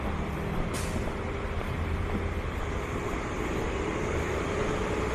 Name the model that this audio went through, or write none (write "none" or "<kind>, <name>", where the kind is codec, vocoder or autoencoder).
none